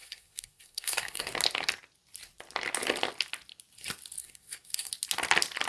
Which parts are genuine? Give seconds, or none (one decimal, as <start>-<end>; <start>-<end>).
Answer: 1.3-4.2; 4.9-5.7